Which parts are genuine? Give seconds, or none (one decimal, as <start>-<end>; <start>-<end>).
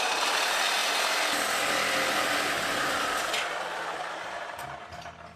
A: 0.8-4.0; 4.6-5.4